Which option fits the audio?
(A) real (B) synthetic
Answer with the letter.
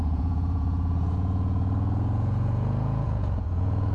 B